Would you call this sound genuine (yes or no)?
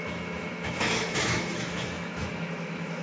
no